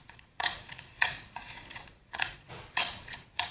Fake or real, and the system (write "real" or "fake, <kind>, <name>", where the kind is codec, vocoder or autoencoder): fake, vocoder, Vocos